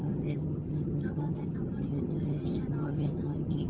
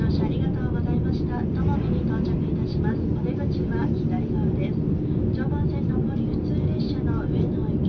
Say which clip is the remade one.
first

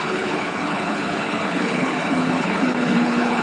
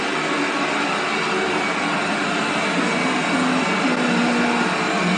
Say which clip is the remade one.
first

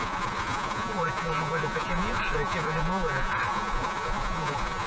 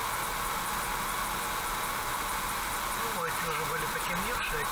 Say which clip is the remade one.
first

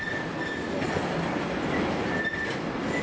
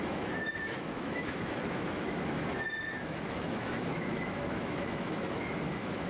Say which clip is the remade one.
second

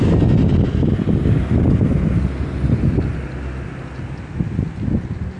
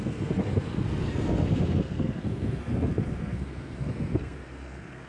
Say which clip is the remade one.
second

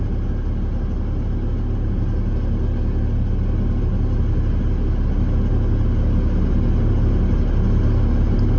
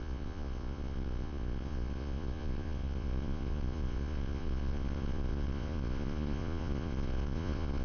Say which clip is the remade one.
second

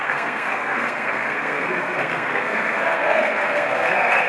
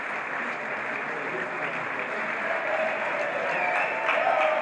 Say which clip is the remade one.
first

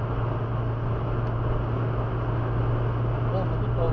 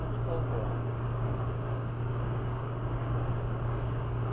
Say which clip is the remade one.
second